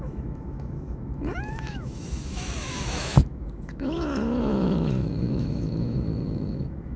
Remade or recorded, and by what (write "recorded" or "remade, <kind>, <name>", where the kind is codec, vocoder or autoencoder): remade, autoencoder, DAC-VAE